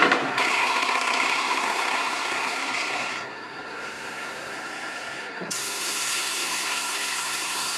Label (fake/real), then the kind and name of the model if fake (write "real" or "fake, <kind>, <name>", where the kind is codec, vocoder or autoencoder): fake, codec, SNAC